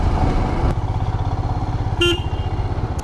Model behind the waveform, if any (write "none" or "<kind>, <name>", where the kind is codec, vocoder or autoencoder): none